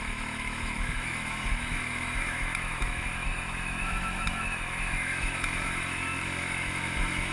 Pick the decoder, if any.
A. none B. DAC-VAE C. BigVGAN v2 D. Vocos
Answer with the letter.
B